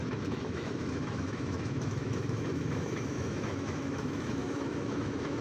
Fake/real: fake